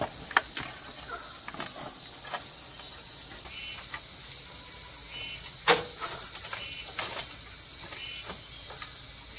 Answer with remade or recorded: recorded